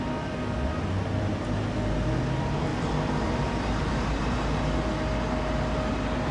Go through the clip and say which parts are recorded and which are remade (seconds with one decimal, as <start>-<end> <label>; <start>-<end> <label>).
0.0-2.7 recorded; 2.7-4.5 remade; 4.5-6.3 recorded